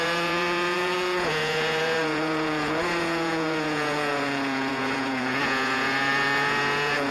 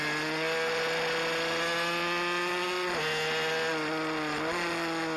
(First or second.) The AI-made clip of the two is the first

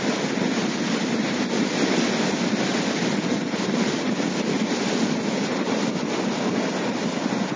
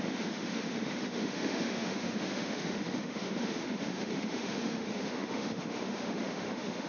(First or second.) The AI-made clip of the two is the second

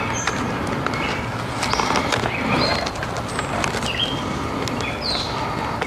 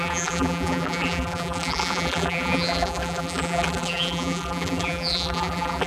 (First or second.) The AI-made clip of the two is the second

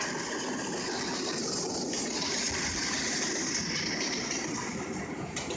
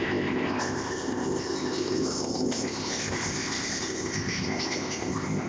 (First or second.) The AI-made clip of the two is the second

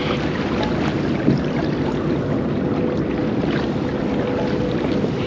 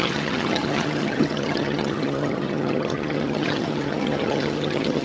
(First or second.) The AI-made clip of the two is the second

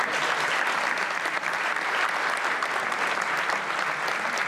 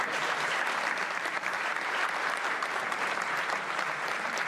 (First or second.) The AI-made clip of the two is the second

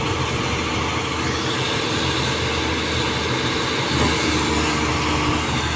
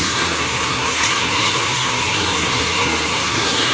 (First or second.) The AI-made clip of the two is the second